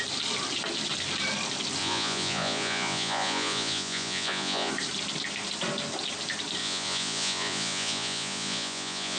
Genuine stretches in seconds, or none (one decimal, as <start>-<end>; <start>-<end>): 0.0-1.8; 4.7-6.6